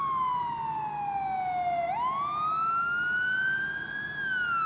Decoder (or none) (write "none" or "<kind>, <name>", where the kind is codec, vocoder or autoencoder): none